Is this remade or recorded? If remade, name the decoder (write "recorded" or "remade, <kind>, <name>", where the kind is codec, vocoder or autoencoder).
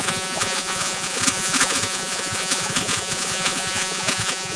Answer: remade, vocoder, Vocos